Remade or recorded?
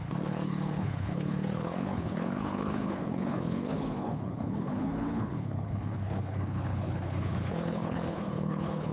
remade